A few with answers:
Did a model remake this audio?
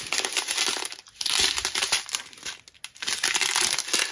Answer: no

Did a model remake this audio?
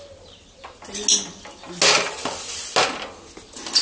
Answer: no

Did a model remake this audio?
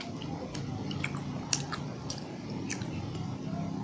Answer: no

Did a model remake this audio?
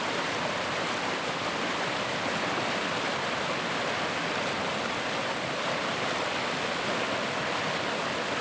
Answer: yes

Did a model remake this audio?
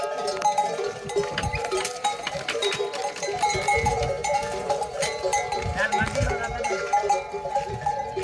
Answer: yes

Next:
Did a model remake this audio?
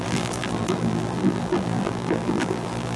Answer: yes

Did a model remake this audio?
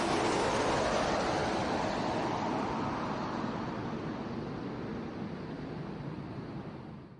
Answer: no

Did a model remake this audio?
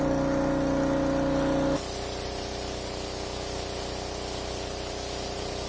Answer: no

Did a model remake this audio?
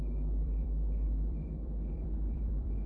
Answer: yes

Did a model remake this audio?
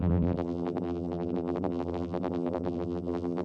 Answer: yes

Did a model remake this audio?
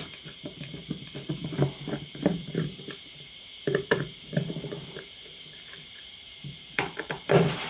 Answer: yes